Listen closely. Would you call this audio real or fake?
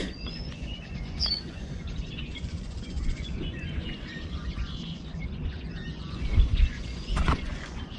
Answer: fake